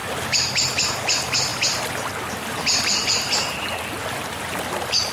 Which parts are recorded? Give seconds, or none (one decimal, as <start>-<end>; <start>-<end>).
0.0-5.1